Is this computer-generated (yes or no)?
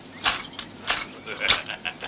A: no